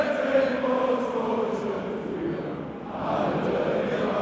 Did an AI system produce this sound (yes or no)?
no